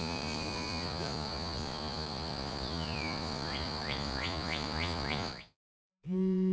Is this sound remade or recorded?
remade